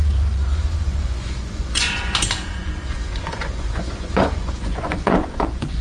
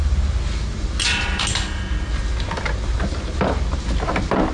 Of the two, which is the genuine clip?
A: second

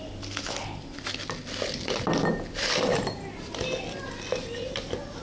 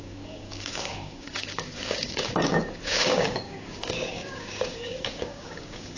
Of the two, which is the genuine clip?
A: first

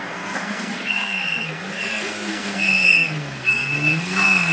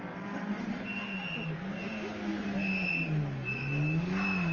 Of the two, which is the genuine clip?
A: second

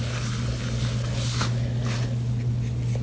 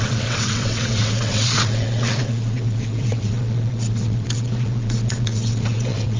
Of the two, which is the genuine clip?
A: first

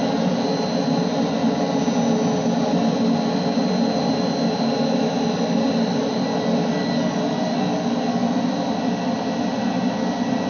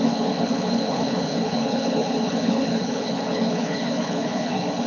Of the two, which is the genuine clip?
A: first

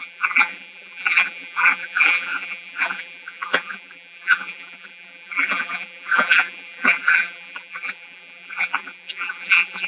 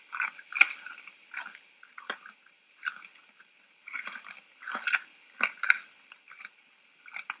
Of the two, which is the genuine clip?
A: second